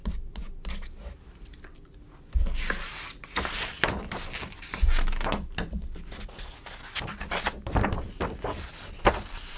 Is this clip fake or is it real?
real